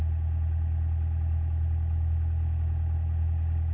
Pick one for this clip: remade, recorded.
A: recorded